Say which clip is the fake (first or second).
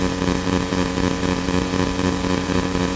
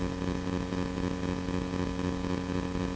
first